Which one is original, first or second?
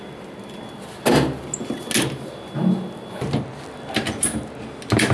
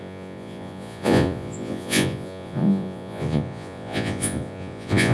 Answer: first